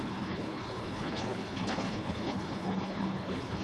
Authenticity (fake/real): fake